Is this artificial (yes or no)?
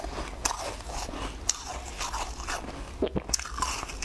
no